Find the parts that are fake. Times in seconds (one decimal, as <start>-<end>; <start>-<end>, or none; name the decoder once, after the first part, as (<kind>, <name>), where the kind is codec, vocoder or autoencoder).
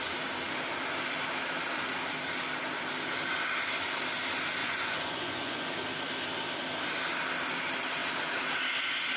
4.6-5.7 (vocoder, Vocos)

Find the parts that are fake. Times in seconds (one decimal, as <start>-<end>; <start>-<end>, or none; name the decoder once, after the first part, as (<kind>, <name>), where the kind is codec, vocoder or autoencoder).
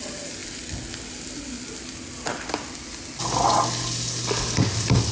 none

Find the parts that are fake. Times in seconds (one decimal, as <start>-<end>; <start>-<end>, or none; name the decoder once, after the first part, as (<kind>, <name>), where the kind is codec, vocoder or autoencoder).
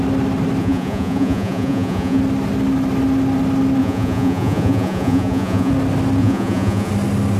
0.6-2.2 (vocoder, Vocos); 3.8-5.7; 6.2-6.9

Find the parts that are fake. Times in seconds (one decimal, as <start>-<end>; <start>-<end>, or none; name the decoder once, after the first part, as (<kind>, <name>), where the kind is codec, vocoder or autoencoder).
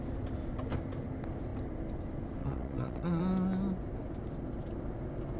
2.4-3.2 (vocoder, WaveNeXt)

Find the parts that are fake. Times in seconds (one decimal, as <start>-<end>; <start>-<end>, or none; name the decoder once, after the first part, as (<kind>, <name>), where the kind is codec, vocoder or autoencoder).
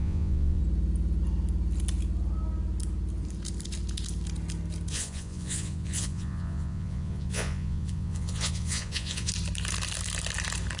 0.0-0.6 (vocoder, Vocos); 4.9-9.3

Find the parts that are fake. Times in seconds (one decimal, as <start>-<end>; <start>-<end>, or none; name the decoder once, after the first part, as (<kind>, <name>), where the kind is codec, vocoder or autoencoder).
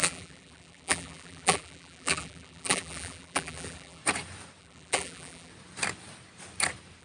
0.0-4.0 (vocoder, BigVGAN v2); 4.6-5.5